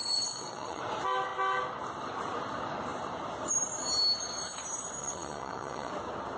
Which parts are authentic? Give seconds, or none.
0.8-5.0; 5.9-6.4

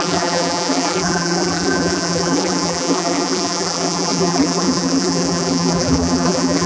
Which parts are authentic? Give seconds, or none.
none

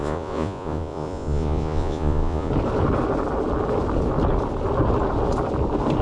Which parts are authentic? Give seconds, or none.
2.5-6.0

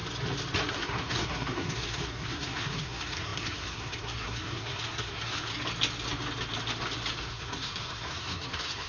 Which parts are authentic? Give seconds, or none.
0.0-0.7; 5.5-7.2

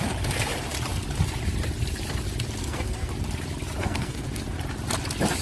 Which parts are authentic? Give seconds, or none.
0.0-2.6; 3.1-3.8; 4.4-5.4

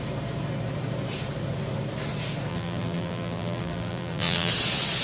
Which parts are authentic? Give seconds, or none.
0.0-2.5; 4.5-5.0